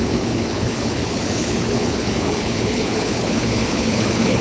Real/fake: fake